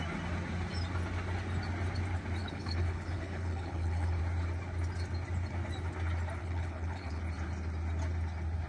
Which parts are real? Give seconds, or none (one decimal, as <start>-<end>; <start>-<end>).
0.0-2.4; 4.2-6.4; 7.2-8.7